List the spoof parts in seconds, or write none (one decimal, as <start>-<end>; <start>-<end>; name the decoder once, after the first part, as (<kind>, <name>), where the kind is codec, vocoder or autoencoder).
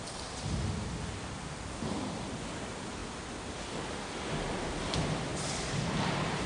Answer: none